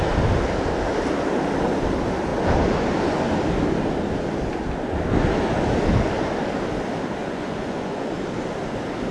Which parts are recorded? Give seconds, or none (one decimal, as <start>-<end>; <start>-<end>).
0.0-7.2; 8.1-9.1